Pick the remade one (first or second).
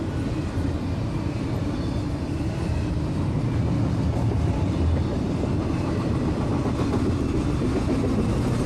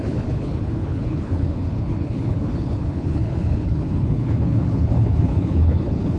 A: second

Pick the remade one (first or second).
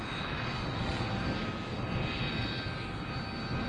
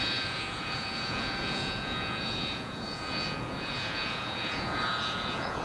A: second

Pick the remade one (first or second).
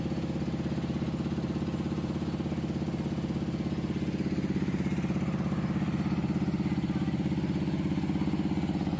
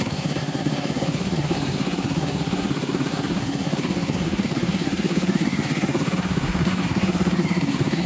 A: second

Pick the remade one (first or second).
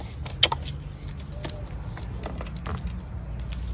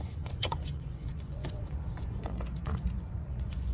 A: second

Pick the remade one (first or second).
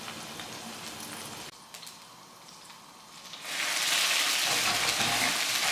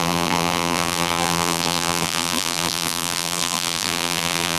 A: second